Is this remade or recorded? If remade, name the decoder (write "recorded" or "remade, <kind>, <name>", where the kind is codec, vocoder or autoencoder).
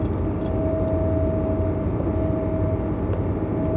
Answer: recorded